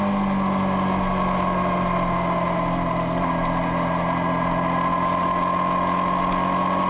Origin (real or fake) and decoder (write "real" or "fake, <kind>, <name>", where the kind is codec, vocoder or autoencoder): real